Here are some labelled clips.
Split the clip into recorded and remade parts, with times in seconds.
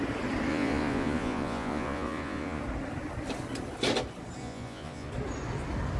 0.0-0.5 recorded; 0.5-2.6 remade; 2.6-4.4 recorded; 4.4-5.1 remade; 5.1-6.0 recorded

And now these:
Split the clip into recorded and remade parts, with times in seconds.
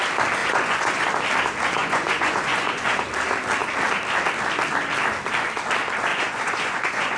0.0-0.4 recorded; 0.4-1.0 remade; 1.0-1.8 recorded; 1.8-3.0 remade; 3.0-6.1 recorded; 6.1-7.2 remade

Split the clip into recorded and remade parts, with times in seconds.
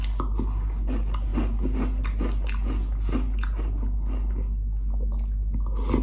0.0-6.0 recorded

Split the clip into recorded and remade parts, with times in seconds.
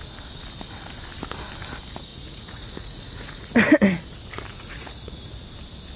0.0-2.1 recorded; 2.1-4.0 remade; 4.0-4.5 recorded; 4.5-5.3 remade; 5.3-6.0 recorded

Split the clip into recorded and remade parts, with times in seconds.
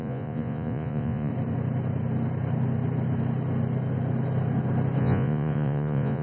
0.0-1.3 remade; 1.3-5.0 recorded; 5.0-6.2 remade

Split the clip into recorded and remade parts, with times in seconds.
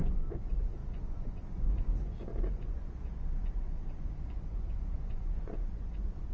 0.0-6.3 remade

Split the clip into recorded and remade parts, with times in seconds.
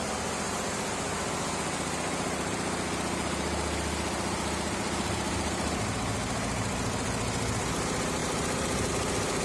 0.0-9.4 recorded